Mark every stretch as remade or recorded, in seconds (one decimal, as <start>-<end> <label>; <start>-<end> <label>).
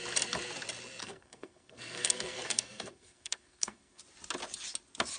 0.0-1.0 recorded; 1.0-4.0 remade; 4.0-5.2 recorded